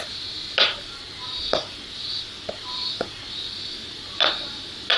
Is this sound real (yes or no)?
yes